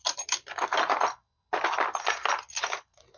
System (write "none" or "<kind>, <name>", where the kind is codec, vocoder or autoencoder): none